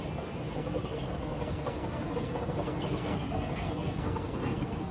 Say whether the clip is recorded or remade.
remade